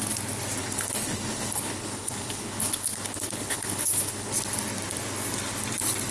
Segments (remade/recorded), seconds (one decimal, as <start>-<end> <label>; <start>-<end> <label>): 0.0-0.6 recorded; 0.6-4.3 remade; 4.3-6.1 recorded